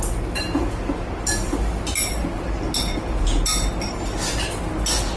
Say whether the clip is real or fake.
real